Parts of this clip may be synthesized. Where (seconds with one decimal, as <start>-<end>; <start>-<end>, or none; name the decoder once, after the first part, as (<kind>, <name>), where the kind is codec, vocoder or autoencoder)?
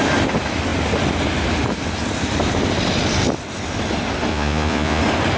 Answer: 4.3-5.0 (vocoder, Vocos)